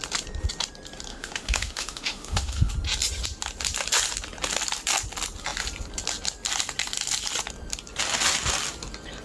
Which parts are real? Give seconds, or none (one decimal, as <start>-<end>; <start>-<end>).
0.0-1.1; 2.7-9.2